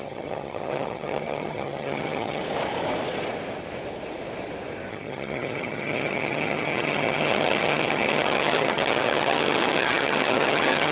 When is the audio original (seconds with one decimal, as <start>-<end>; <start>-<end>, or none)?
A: 2.4-4.9